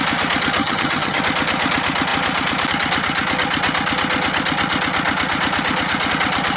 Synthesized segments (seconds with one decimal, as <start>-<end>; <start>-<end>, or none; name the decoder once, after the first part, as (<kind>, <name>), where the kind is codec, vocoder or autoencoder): 0.6-1.2 (vocoder, HiFi-GAN)